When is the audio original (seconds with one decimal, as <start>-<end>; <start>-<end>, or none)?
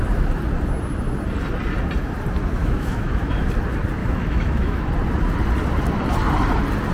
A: 0.0-2.6; 3.5-4.0; 4.9-6.9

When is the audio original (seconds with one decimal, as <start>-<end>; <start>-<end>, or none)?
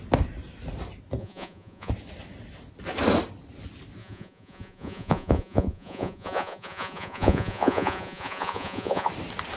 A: 0.0-1.2; 1.9-4.0; 9.1-9.6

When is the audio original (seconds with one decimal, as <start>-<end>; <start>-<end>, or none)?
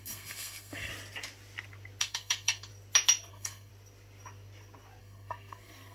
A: 0.9-2.0; 2.7-3.3; 3.7-5.0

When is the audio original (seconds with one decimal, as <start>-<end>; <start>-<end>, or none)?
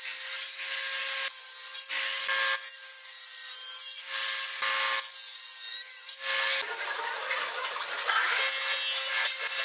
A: 0.0-9.6